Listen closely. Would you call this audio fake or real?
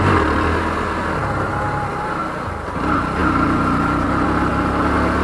real